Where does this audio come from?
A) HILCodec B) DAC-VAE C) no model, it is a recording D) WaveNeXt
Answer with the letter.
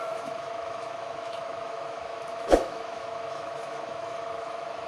B